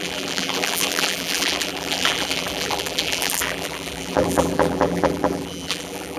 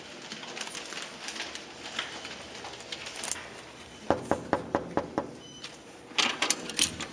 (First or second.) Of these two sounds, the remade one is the first